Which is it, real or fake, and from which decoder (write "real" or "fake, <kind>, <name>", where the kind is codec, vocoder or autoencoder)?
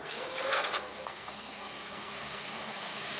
fake, codec, SNAC